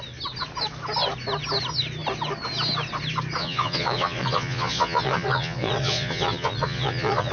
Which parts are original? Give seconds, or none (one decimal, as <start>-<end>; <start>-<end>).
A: 0.0-3.4